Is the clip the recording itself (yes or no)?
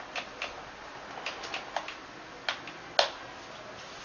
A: yes